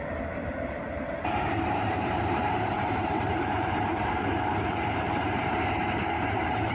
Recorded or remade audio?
remade